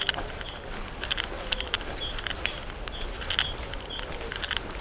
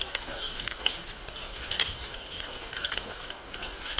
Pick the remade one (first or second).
second